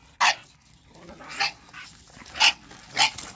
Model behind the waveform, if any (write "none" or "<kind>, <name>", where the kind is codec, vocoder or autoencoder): none